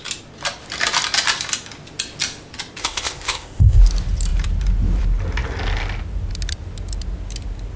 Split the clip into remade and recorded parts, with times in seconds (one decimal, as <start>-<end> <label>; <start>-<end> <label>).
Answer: 0.0-2.8 recorded; 2.8-3.8 remade; 3.8-7.8 recorded